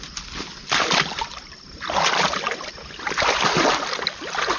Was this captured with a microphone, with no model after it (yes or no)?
yes